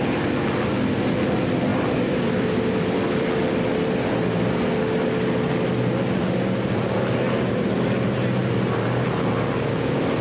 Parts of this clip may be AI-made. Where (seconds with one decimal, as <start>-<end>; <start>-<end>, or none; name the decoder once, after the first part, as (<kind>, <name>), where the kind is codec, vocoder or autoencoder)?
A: 1.7-4.1 (vocoder, BigVGAN v2)